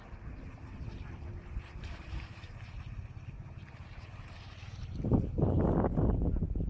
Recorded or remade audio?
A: recorded